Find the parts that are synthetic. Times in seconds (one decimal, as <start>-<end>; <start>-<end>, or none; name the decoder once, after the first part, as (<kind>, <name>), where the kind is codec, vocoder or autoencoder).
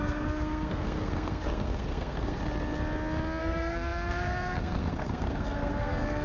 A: 0.0-2.4 (codec, SNAC); 3.4-6.2